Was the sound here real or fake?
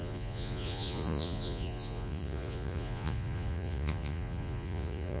fake